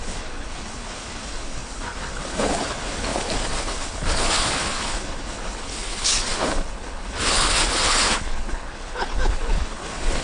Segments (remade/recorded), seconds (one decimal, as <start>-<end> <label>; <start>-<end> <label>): 0.0-10.2 remade